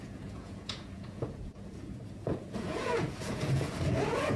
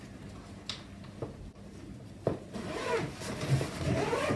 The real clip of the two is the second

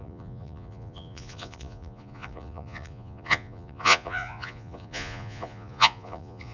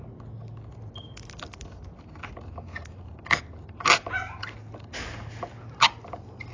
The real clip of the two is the second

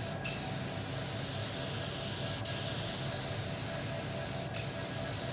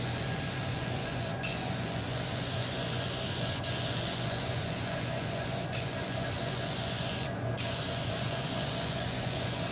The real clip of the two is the first